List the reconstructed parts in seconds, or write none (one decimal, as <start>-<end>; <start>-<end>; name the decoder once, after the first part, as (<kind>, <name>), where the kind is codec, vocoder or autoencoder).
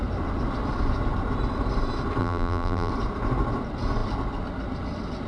2.2-2.9 (vocoder, BigVGAN v2)